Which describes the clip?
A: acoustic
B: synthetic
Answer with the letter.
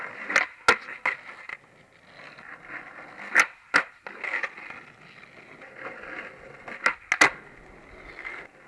A